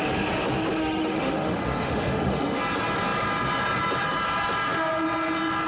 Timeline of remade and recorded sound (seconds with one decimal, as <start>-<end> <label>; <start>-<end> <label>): 0.0-0.8 recorded; 0.8-2.6 remade; 2.6-5.7 recorded